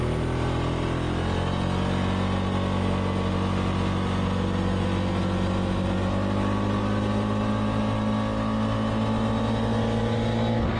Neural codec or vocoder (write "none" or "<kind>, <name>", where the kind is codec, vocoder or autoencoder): none